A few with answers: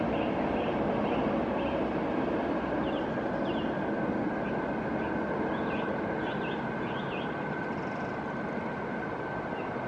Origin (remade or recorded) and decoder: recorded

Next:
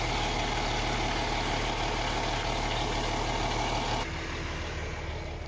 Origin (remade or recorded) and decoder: recorded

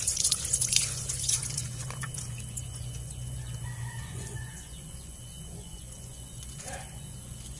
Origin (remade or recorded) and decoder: remade, vocoder, Vocos